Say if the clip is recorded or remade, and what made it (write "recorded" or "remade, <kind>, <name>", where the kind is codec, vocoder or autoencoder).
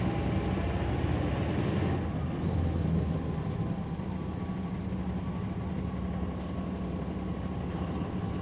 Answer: recorded